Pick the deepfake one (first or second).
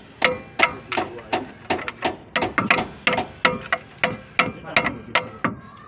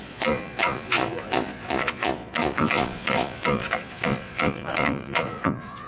second